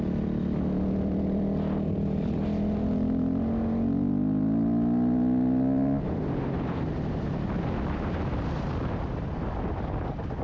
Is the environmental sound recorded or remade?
recorded